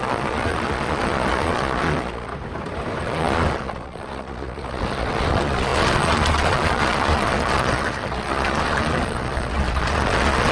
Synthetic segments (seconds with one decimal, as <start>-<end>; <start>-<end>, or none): 0.0-2.3; 3.0-10.5